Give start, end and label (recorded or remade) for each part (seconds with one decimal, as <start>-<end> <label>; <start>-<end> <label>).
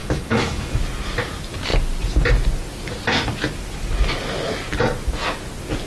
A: 0.0-0.8 remade; 0.8-5.9 recorded